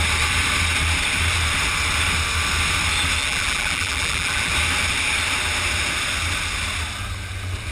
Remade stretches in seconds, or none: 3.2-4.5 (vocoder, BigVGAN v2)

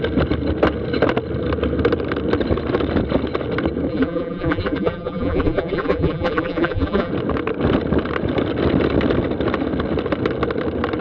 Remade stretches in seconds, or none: 3.9-7.1 (vocoder, BigVGAN v2)

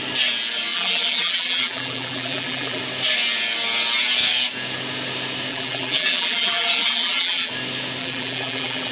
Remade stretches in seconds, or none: 0.7-2.8 (vocoder, BigVGAN v2); 5.5-7.5; 8.0-8.9

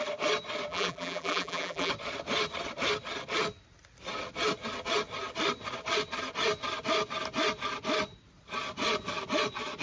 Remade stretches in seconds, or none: 0.7-1.9 (vocoder, BigVGAN v2)

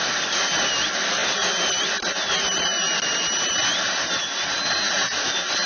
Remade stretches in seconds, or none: none

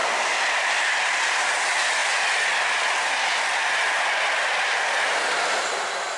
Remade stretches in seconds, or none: 0.0-1.6 (vocoder, BigVGAN v2)